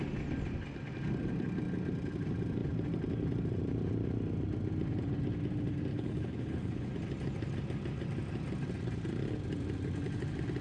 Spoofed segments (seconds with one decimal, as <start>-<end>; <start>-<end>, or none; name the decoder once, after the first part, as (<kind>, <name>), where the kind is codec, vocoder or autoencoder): 5.9-6.9 (codec, HILCodec)